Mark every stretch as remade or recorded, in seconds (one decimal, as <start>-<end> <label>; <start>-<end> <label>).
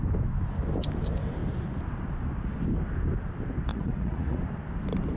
0.0-3.7 recorded; 3.7-4.4 remade; 4.4-5.2 recorded